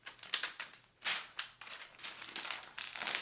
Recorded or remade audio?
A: recorded